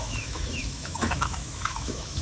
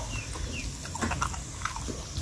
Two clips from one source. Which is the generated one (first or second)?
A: first